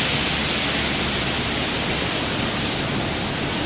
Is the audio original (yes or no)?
yes